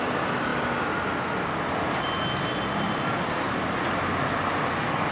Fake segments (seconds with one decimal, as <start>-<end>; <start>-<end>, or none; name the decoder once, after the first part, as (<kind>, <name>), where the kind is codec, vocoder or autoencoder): none